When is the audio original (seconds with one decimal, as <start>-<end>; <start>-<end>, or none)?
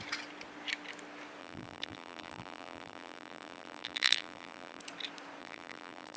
0.0-1.4; 4.8-5.4